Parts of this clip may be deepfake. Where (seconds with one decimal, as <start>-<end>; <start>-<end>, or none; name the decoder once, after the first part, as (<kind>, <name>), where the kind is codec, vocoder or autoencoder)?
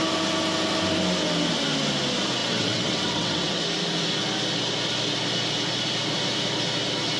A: 2.4-3.6 (vocoder, WaveNeXt)